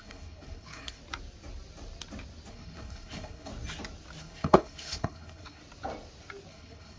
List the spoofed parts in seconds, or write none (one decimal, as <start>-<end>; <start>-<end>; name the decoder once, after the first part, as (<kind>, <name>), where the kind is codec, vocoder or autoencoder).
0.0-1.0 (codec, HILCodec); 2.5-3.5; 4.2-5.6; 6.5-7.0